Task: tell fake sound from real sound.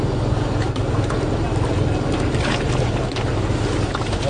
real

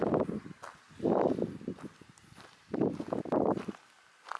real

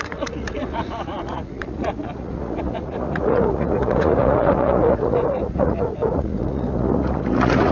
fake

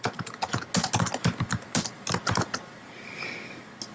real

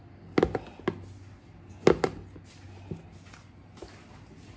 real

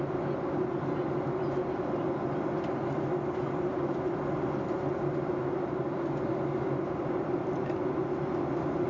real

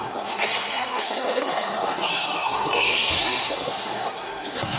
fake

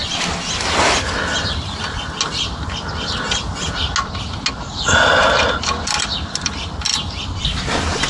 real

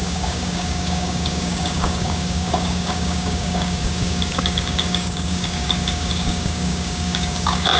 fake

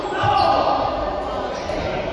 real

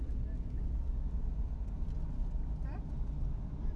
real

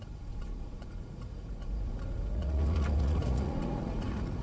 fake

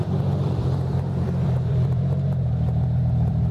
fake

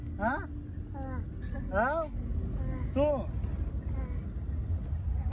real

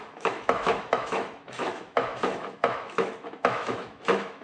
fake